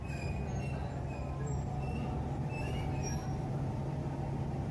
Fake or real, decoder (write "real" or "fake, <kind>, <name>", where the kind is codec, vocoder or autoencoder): real